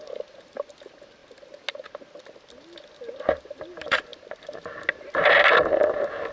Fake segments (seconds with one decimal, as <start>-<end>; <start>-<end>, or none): none